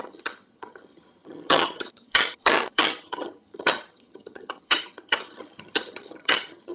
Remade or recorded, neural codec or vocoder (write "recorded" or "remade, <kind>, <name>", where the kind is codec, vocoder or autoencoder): remade, vocoder, HiFi-GAN